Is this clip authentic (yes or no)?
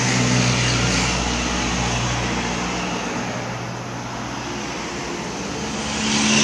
yes